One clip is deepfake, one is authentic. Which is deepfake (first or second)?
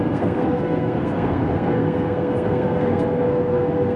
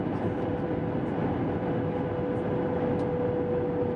first